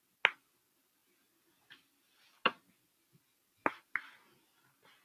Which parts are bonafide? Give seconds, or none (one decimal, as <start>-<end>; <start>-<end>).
0.0-5.0

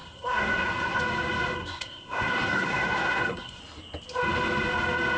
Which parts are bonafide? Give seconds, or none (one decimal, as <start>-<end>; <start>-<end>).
1.0-1.6; 3.6-5.2

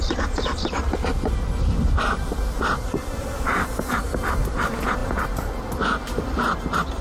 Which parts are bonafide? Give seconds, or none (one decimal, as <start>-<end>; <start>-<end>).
0.0-7.0

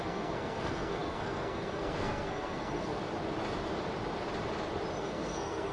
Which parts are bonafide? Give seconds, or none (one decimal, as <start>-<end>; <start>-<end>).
3.0-5.0

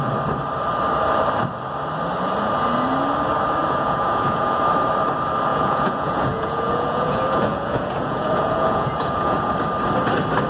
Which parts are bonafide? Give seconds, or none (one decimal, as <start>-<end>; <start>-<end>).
0.0-3.6; 4.6-5.5; 9.5-10.5